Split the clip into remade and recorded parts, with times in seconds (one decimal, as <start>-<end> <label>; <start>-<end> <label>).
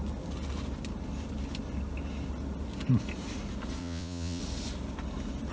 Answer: 0.0-3.8 recorded; 3.8-4.4 remade; 4.4-5.5 recorded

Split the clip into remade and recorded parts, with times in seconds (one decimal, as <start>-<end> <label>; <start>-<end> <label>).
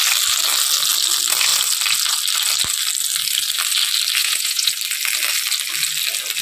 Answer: 0.0-4.2 recorded; 4.2-4.7 remade; 4.7-6.4 recorded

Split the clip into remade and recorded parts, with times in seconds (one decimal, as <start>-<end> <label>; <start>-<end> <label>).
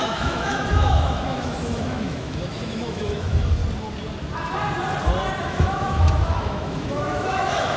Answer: 0.0-3.6 remade; 3.6-5.4 recorded; 5.4-7.8 remade